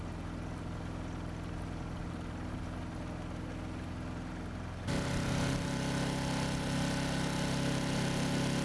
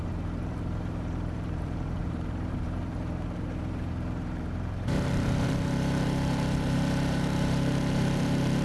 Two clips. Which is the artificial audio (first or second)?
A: second